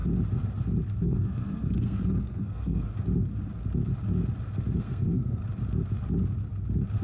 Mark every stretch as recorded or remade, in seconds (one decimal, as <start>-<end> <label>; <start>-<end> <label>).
0.0-1.0 recorded; 1.0-2.9 remade; 2.9-4.8 recorded; 4.8-5.4 remade; 5.4-7.0 recorded